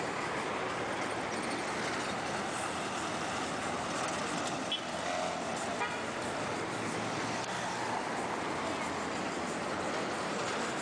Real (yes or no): yes